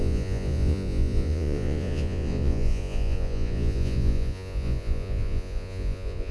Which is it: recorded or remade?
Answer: remade